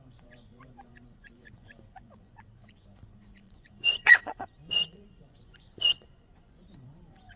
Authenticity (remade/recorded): remade